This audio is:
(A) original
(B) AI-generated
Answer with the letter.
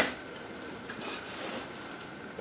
A